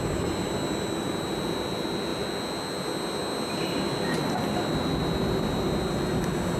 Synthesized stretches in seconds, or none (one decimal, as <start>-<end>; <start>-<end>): none